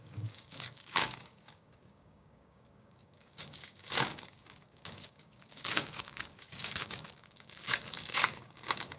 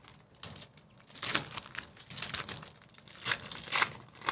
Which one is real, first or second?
second